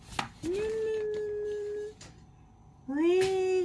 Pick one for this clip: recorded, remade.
recorded